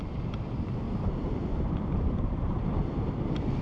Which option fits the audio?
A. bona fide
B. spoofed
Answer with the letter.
A